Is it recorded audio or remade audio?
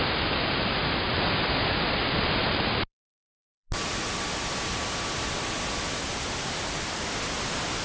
recorded